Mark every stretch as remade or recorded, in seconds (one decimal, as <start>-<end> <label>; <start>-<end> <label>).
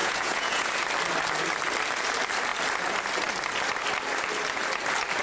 0.0-0.7 remade; 0.7-5.2 recorded